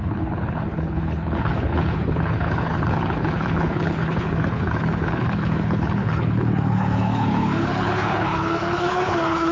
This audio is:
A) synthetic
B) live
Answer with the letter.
A